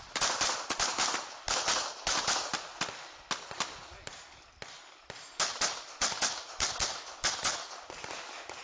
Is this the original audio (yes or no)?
yes